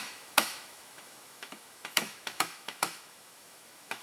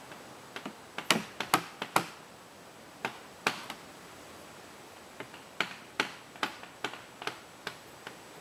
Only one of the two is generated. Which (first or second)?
first